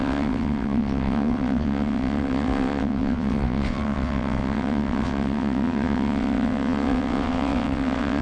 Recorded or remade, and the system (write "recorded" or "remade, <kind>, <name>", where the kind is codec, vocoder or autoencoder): remade, vocoder, WaveNeXt